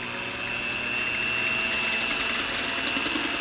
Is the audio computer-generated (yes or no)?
no